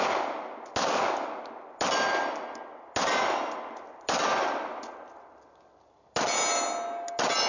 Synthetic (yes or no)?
no